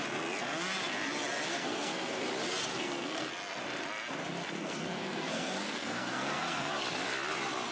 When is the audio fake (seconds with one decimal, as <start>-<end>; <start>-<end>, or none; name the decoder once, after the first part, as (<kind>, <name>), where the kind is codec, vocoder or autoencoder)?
1.5-2.2 (codec, SNAC); 2.7-3.3; 4.4-6.7